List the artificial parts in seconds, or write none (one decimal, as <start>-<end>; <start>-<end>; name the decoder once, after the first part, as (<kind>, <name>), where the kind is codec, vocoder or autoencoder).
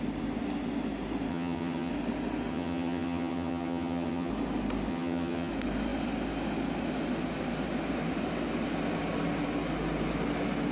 1.3-1.9 (vocoder, HiFi-GAN); 2.5-4.3; 4.9-5.5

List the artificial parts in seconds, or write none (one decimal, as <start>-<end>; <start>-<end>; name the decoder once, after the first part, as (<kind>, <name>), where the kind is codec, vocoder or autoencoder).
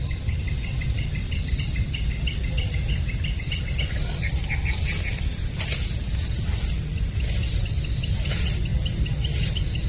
none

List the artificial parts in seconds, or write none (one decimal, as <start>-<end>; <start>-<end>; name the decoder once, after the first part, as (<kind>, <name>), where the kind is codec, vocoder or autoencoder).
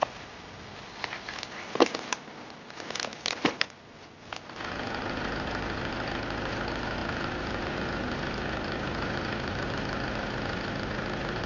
none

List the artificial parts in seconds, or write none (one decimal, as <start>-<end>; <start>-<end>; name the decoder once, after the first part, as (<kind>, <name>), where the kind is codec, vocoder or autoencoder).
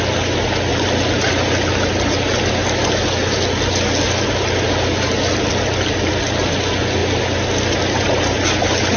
none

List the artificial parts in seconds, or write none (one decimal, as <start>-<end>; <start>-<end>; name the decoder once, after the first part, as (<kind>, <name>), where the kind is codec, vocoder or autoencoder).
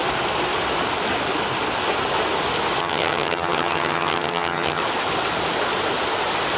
2.8-4.8 (vocoder, HiFi-GAN)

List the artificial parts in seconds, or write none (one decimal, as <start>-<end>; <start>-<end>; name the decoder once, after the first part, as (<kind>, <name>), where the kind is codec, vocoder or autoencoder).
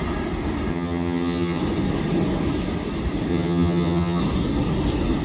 0.7-1.6 (vocoder, HiFi-GAN); 3.3-4.2